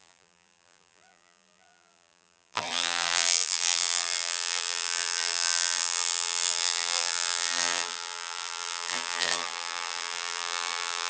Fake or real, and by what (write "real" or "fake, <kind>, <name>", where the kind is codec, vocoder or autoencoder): fake, vocoder, BigVGAN v2